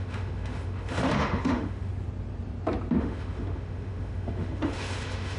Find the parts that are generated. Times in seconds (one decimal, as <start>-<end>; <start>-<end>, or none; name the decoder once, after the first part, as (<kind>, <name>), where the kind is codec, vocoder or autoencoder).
0.0-1.9 (autoencoder, DAC-VAE); 3.0-5.4